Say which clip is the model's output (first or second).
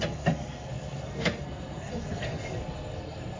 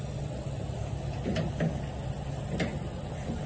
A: first